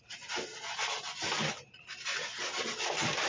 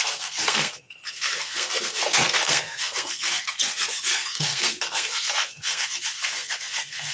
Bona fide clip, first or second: first